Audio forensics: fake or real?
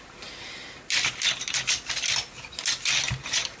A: real